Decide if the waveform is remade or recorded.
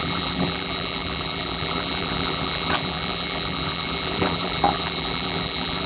remade